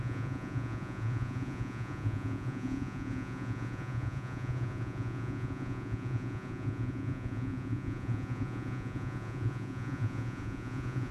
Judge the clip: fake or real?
fake